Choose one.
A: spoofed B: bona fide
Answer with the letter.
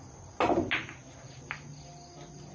B